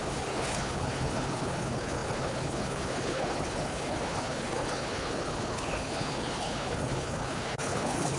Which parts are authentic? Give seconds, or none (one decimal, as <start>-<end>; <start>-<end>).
none